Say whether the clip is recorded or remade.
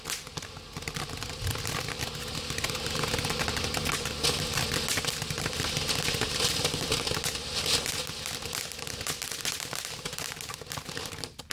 recorded